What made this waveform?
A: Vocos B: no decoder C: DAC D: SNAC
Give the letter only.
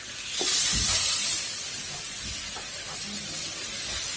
B